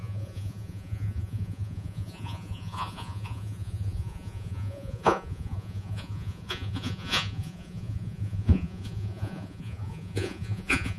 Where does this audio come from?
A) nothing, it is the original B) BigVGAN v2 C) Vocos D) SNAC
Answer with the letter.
C